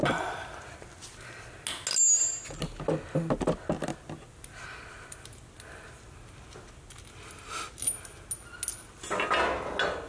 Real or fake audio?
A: real